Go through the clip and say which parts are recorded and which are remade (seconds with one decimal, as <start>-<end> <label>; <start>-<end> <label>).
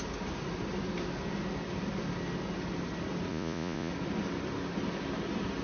0.0-3.3 recorded; 3.3-3.9 remade; 3.9-5.6 recorded